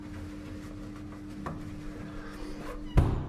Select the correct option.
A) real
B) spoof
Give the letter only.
A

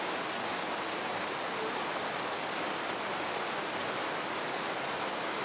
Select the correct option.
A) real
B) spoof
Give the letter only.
A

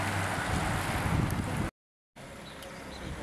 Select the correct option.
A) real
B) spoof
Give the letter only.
A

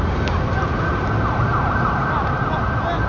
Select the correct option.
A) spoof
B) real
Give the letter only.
B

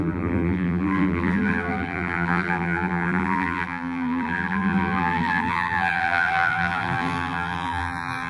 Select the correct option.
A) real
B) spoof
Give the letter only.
B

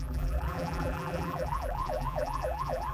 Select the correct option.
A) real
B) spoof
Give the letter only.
B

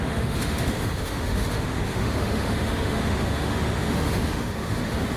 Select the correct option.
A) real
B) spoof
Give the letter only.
B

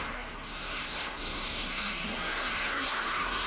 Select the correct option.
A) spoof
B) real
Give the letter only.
A